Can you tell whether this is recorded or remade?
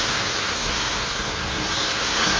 remade